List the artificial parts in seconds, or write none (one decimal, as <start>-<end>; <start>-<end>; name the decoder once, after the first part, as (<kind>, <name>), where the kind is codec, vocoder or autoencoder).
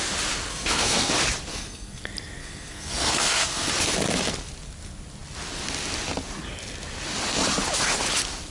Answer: 0.5-1.1 (codec, SNAC); 1.5-2.0; 2.4-3.7